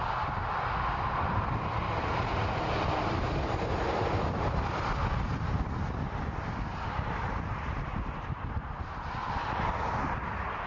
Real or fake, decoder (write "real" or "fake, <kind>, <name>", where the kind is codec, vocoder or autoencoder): real